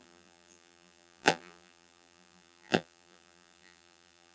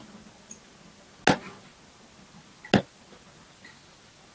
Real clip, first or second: second